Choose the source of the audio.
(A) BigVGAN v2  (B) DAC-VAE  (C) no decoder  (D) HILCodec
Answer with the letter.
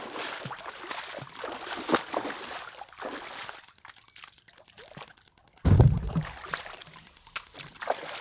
C